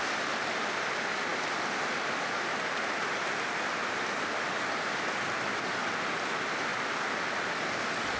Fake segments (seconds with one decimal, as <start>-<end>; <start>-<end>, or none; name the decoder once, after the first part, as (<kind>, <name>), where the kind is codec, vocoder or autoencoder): none